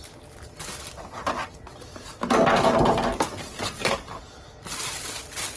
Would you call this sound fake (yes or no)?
no